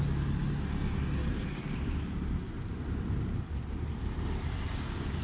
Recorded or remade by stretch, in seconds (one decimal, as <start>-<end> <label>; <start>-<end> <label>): 0.0-1.2 recorded; 1.2-4.3 remade; 4.3-5.2 recorded